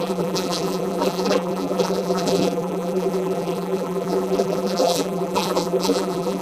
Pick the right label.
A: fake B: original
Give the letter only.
A